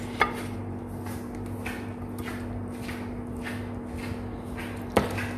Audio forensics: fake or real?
real